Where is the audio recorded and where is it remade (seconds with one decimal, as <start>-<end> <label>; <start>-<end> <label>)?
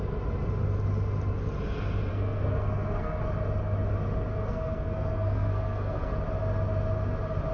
0.0-2.1 recorded; 2.1-3.2 remade; 3.2-4.3 recorded; 4.3-6.1 remade; 6.1-7.5 recorded